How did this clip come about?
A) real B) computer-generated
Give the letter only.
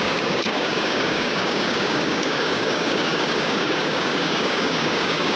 B